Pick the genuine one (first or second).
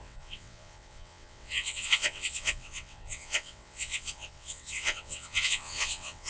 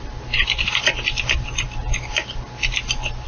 second